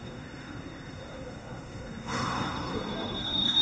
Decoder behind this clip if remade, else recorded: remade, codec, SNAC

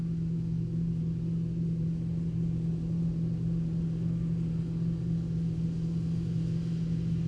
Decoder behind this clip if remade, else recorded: recorded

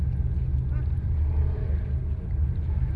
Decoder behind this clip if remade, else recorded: recorded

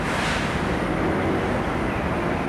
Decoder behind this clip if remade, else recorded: recorded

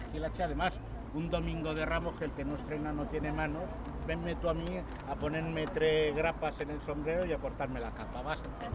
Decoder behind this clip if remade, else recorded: recorded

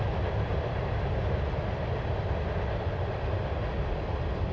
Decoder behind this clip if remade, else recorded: recorded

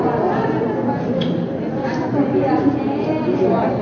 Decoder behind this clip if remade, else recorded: recorded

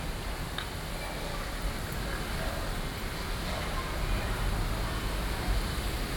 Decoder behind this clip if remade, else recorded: recorded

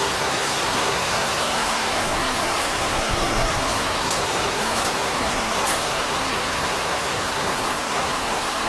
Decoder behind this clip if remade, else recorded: remade, codec, SNAC